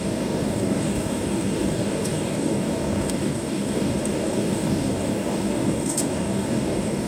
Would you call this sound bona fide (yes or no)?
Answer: no